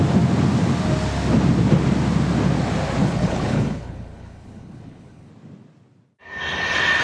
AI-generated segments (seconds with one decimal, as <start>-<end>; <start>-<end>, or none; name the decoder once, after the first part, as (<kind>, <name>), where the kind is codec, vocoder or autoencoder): 3.0-5.3 (codec, HILCodec)